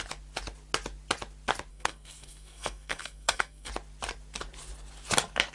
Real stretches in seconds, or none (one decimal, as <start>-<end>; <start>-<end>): 0.0-1.7; 3.7-5.5